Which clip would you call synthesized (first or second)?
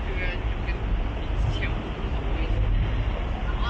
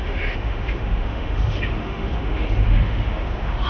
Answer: second